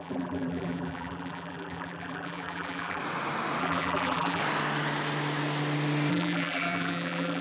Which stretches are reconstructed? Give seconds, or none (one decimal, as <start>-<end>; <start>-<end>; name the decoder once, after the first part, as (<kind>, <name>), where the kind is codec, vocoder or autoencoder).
0.0-3.0 (vocoder, BigVGAN v2); 3.6-4.4; 6.1-7.4